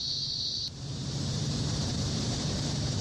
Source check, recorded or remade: remade